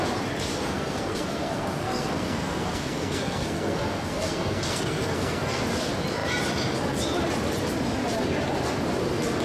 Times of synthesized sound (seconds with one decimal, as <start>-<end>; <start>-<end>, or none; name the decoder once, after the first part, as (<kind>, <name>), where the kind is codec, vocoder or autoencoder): 0.5-5.6 (codec, SNAC)